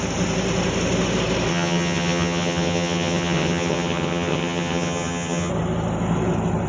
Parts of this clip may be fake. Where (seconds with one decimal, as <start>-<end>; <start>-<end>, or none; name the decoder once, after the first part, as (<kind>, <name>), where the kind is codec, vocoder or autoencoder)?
1.5-5.5 (vocoder, HiFi-GAN)